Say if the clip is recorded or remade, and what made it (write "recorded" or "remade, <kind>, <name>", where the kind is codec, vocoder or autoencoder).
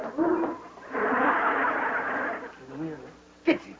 recorded